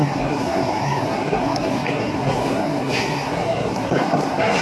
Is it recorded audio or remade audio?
remade